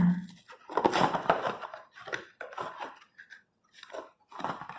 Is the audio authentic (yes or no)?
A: yes